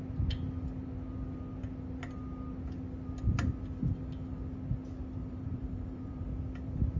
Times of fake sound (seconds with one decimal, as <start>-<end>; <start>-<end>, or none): 5.2-6.2